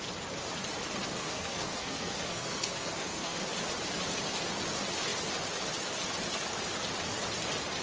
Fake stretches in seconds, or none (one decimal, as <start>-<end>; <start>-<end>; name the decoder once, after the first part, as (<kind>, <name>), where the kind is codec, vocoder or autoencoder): 1.2-3.4 (codec, SNAC)